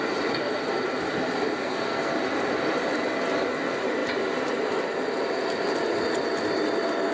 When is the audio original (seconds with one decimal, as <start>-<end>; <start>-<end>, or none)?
0.0-1.6; 2.1-7.1